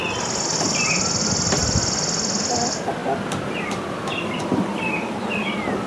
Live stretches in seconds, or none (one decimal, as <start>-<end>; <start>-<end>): 0.0-5.9

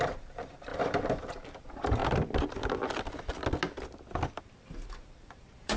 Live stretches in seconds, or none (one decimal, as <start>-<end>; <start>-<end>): 2.0-4.4

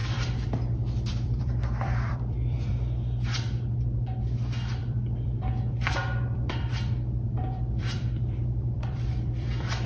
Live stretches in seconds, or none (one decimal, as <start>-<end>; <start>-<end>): 2.7-4.8

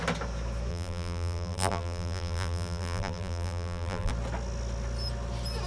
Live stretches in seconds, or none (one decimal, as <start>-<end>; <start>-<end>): 0.0-0.7; 4.1-5.7

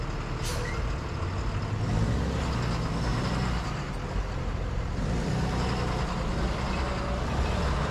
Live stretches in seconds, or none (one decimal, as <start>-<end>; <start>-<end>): 0.0-3.1; 5.7-7.9

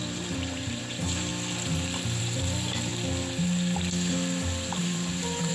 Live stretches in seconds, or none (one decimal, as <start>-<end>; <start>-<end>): 1.3-2.2; 2.9-4.8

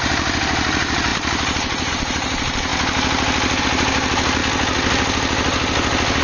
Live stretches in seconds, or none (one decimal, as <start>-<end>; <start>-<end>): 2.7-3.6; 4.4-6.2